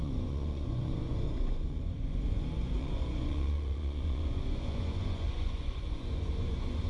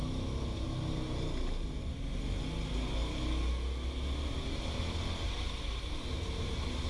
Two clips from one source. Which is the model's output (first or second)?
first